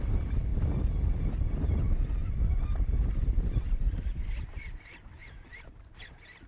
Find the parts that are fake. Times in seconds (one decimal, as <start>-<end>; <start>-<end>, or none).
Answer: none